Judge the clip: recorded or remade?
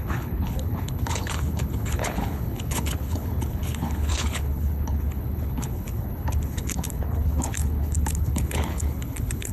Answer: remade